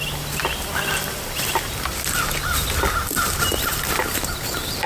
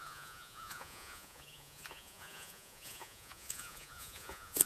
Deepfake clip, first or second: second